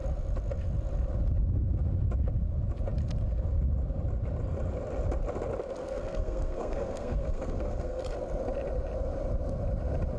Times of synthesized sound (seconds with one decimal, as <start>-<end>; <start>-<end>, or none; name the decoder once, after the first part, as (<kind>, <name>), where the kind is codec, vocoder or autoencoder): 5.8-8.0 (codec, SNAC)